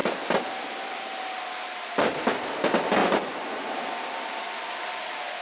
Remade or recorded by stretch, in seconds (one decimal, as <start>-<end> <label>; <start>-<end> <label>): 0.0-3.0 recorded; 3.0-3.7 remade; 3.7-5.4 recorded

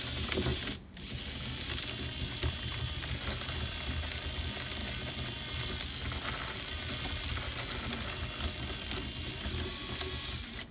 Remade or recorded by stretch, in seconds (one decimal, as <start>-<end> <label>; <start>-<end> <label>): 0.0-10.7 recorded

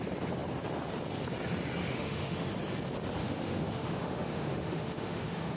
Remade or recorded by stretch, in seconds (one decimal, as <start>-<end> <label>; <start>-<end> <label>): 0.0-1.8 recorded; 1.8-2.5 remade; 2.5-3.2 recorded; 3.2-5.6 remade

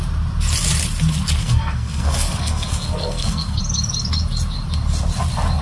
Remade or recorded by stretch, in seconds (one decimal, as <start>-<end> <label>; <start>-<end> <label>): 0.0-1.4 recorded; 1.4-3.6 remade; 3.6-5.6 recorded